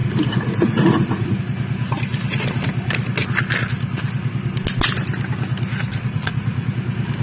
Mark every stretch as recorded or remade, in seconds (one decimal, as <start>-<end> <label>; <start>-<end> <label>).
0.0-1.4 remade; 1.4-5.9 recorded; 5.9-6.7 remade; 6.7-7.2 recorded